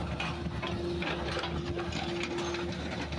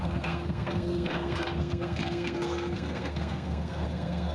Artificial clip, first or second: second